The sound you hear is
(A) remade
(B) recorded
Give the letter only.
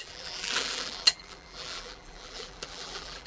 A